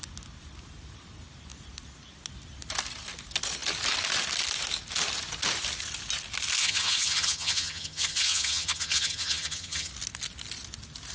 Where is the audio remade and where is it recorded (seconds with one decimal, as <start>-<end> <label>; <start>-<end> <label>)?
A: 0.0-6.6 recorded; 6.6-9.9 remade; 9.9-11.1 recorded